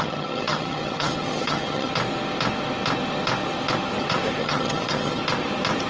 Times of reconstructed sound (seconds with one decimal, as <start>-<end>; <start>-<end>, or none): 0.0-1.9; 4.4-5.2

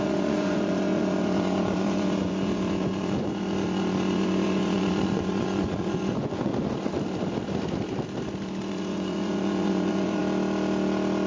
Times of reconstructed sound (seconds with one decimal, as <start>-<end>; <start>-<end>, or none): 0.0-6.5; 8.7-10.2

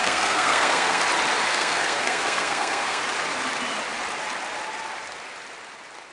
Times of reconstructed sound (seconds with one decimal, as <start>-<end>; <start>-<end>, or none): 0.0-1.0; 1.5-3.0

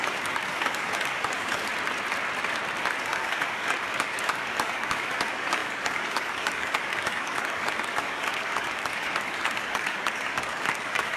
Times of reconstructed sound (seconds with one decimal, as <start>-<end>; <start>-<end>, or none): 0.0-1.7; 3.0-11.2